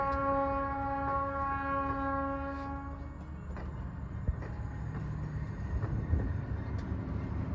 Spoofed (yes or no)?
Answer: no